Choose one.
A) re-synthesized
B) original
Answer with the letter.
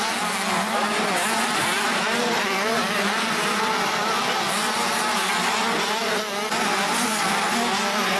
B